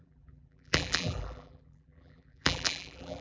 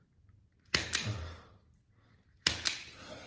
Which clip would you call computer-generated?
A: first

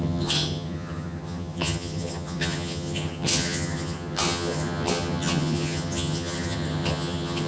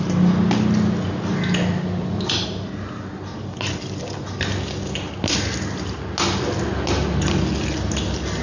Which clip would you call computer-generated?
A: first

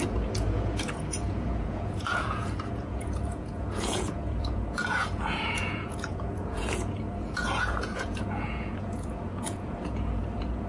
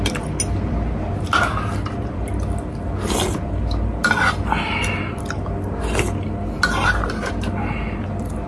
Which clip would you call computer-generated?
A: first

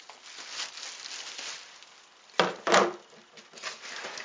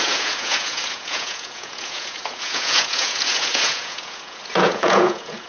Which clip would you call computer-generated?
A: second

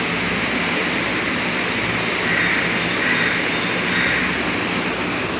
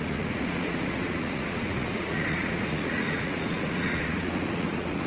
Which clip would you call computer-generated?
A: second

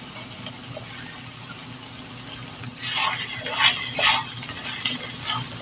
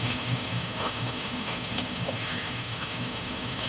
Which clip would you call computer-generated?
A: second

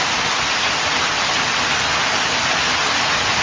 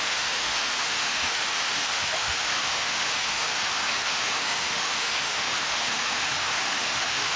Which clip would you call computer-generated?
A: second